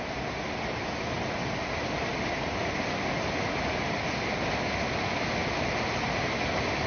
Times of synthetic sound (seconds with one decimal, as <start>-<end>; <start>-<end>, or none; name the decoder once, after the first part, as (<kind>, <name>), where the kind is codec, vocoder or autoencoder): 2.6-4.0 (vocoder, BigVGAN v2)